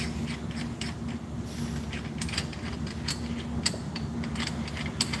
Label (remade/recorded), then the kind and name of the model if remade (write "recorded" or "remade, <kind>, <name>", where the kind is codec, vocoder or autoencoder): recorded